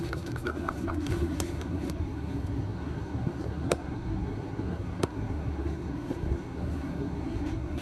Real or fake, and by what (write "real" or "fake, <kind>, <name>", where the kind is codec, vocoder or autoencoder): fake, codec, SNAC